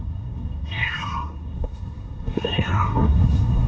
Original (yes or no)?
no